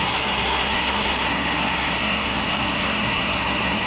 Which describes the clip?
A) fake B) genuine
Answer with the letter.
A